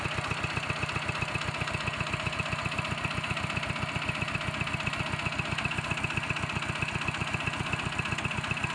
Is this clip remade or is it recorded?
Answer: recorded